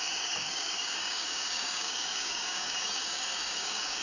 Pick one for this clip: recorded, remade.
remade